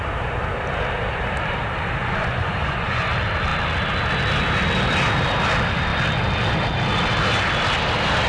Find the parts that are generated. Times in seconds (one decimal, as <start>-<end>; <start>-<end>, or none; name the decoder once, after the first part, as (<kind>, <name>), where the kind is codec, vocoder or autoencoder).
2.0-3.1 (vocoder, Vocos)